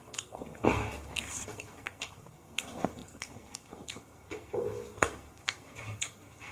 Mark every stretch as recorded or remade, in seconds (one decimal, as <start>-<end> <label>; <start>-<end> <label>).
0.0-6.5 remade